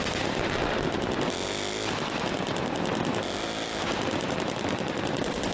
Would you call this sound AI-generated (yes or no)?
no